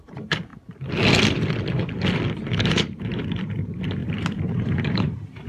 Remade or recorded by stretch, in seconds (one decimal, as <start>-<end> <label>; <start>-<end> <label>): 0.0-0.5 remade; 0.5-2.5 recorded; 2.5-5.5 remade